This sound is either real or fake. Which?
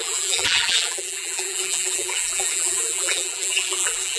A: fake